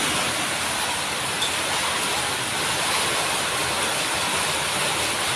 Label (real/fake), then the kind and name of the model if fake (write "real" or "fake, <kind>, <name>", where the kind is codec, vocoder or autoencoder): real